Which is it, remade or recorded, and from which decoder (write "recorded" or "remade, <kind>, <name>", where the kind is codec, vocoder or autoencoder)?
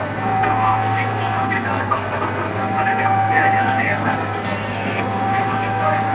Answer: remade, codec, SNAC